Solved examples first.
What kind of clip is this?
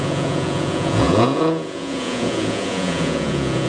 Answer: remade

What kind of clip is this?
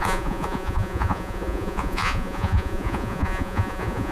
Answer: remade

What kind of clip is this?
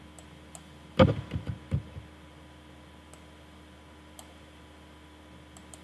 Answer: recorded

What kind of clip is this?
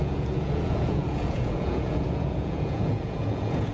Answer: remade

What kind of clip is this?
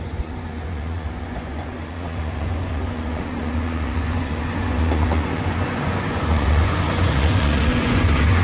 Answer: remade